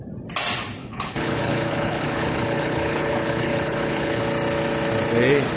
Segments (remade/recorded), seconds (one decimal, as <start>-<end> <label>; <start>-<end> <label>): 0.0-0.8 recorded; 0.8-4.2 remade; 4.2-5.6 recorded